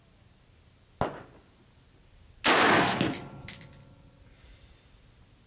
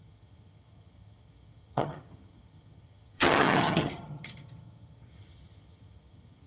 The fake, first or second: second